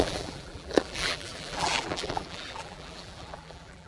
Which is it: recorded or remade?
remade